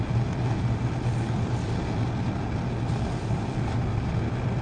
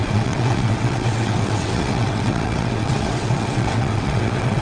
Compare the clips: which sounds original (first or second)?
first